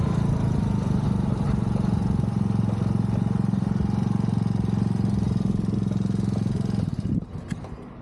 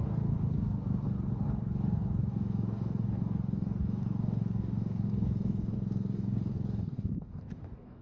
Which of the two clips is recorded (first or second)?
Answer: first